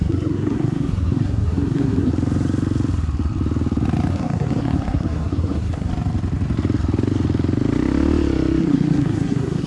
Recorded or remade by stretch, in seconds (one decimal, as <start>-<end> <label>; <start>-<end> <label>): 0.0-2.1 remade; 2.1-4.1 recorded; 4.1-5.9 remade; 5.9-8.6 recorded; 8.6-9.7 remade